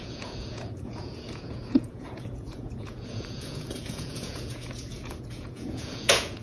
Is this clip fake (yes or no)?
yes